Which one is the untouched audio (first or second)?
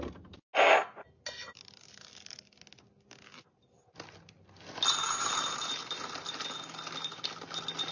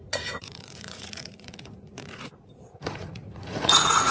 first